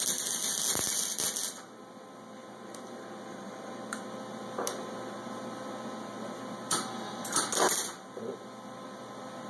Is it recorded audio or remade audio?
recorded